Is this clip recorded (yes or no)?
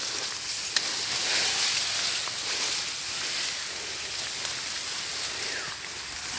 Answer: yes